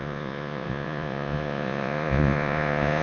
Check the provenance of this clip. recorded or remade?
remade